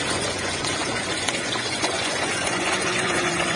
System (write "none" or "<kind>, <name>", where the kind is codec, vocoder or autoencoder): vocoder, Vocos